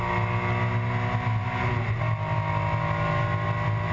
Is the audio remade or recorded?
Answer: recorded